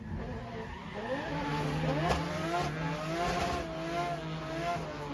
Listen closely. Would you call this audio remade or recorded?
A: recorded